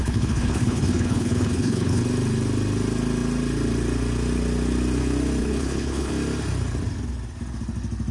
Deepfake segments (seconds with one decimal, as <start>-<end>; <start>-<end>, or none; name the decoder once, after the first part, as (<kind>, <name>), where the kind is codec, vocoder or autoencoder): 0.0-2.0 (codec, HILCodec); 5.4-6.1

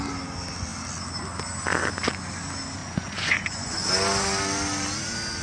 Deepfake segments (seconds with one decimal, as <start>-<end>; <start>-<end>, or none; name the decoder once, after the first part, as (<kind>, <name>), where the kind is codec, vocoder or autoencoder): 2.8-3.9 (vocoder, Vocos)

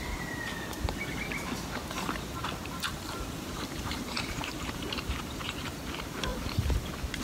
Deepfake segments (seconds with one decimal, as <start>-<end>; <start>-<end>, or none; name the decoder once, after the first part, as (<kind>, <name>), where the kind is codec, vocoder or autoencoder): 2.9-5.8 (vocoder, BigVGAN v2)

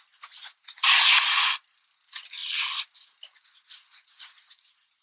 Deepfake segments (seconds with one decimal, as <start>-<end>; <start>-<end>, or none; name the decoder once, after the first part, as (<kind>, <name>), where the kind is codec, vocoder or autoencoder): none

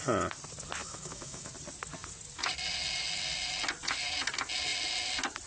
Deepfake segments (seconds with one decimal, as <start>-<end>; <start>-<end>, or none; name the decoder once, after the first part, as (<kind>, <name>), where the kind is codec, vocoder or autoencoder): 0.8-1.5 (autoencoder, DAC-VAE)

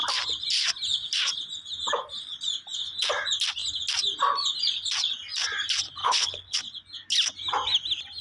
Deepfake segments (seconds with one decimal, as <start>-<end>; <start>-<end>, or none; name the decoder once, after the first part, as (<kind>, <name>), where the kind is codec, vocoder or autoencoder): 6.0-6.6 (codec, HILCodec)

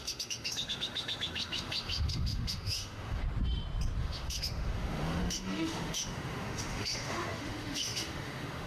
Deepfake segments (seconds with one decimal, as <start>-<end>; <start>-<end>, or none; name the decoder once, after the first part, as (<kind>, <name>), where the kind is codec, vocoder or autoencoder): 0.0-3.2 (autoencoder, DAC-VAE); 4.0-8.7

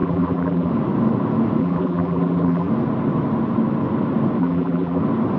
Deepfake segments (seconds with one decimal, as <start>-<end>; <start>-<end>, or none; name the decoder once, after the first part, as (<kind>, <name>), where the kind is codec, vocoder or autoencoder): 0.0-0.7 (vocoder, BigVGAN v2); 1.6-2.7; 4.4-5.0